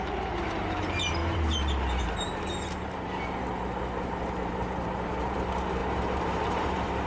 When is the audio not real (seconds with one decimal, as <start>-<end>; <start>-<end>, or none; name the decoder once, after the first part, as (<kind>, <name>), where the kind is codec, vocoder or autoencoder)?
0.0-3.4 (vocoder, BigVGAN v2); 4.0-7.1